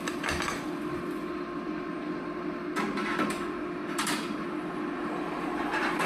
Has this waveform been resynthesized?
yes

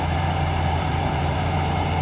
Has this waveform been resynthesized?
yes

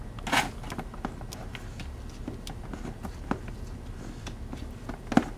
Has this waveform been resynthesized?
no